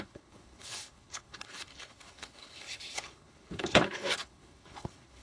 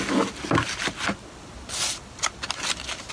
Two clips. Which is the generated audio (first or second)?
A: first